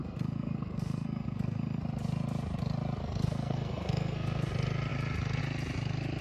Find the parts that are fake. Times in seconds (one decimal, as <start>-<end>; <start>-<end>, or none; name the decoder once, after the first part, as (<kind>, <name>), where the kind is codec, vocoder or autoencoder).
0.0-1.8 (codec, SNAC); 3.0-4.5